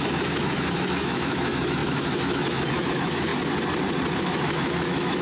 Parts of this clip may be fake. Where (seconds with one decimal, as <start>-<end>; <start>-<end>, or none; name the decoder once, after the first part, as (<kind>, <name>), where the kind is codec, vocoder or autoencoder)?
0.0-3.3 (autoencoder, DAC-VAE); 4.2-5.2